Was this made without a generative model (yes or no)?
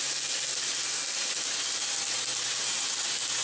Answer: yes